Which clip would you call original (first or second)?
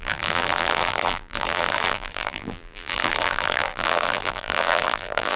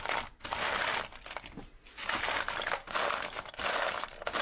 second